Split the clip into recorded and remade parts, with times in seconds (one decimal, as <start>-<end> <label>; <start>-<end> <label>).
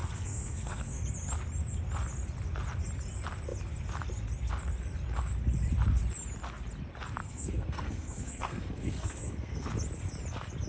0.0-1.0 remade; 1.0-7.2 recorded; 7.2-9.7 remade; 9.7-10.7 recorded